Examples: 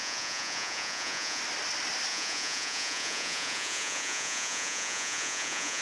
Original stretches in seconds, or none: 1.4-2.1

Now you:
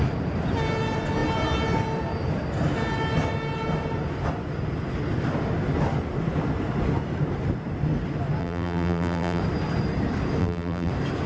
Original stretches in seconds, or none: 0.0-8.4; 9.4-10.4; 10.9-11.3

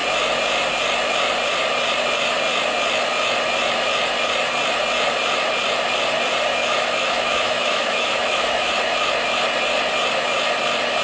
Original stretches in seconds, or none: 0.0-6.6; 8.7-11.0

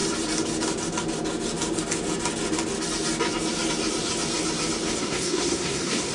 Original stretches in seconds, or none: 0.0-5.0

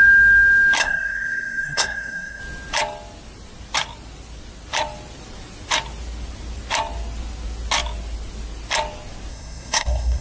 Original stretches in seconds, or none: 0.0-0.8; 2.4-9.3

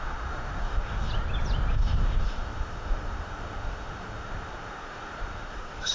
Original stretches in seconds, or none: 1.1-1.7